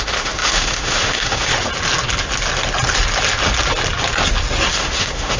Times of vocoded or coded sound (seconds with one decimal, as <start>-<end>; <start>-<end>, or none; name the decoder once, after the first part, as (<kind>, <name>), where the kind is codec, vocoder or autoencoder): 0.0-1.5 (autoencoder, DAC-VAE); 4.7-5.4